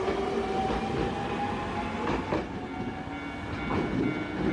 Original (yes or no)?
yes